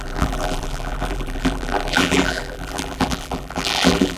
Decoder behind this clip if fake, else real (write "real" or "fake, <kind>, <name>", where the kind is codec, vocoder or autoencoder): fake, vocoder, BigVGAN v2